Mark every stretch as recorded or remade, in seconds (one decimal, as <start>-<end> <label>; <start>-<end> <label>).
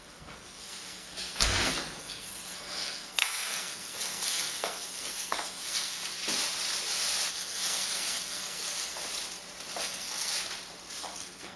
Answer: 0.0-6.2 remade; 6.2-7.3 recorded; 7.3-9.0 remade; 9.0-9.8 recorded; 9.8-10.3 remade; 10.3-11.0 recorded; 11.0-11.6 remade